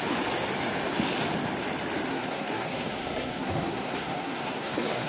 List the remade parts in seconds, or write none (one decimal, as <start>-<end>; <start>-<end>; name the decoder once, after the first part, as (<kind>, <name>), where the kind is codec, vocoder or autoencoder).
2.1-5.1 (codec, SNAC)